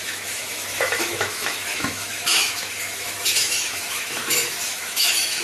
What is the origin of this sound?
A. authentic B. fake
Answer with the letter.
B